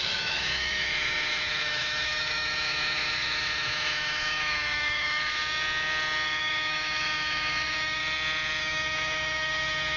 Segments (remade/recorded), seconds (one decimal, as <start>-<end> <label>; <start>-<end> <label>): 0.0-5.4 remade; 5.4-6.4 recorded; 6.4-8.0 remade; 8.0-8.6 recorded; 8.6-10.0 remade